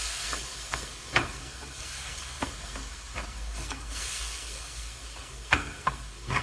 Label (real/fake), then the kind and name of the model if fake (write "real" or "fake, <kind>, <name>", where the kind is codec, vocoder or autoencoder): fake, codec, SNAC